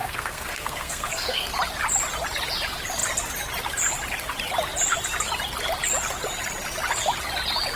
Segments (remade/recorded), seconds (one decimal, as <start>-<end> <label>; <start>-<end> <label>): 0.0-1.5 remade; 1.5-7.8 recorded